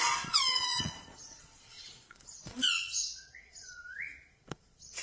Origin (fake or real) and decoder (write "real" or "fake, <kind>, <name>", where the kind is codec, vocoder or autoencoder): fake, vocoder, Vocos